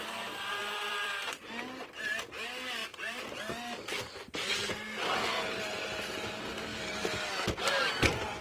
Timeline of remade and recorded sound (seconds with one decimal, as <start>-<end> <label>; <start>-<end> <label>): 0.0-0.6 recorded; 0.6-1.2 remade; 1.2-2.8 recorded; 2.8-3.4 remade; 3.4-6.7 recorded; 6.7-7.7 remade; 7.7-8.4 recorded

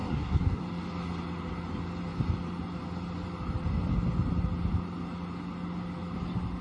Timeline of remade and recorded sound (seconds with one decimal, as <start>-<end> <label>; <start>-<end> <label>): 0.0-0.6 remade; 0.6-6.6 recorded